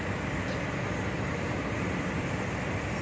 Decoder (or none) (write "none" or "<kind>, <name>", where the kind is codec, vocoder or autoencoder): vocoder, BigVGAN v2